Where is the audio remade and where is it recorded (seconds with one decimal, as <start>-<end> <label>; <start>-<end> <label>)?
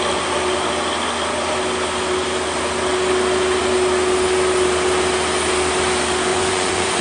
0.0-6.3 recorded; 6.3-7.0 remade